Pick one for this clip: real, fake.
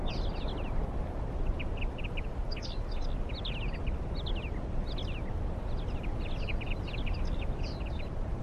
real